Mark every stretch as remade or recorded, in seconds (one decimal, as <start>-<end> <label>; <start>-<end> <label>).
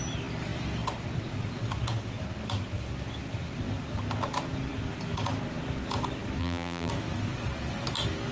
0.0-6.4 recorded; 6.4-6.9 remade; 6.9-8.3 recorded